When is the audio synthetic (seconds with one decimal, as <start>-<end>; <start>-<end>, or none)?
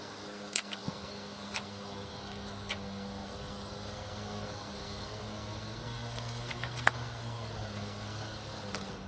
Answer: 0.0-9.1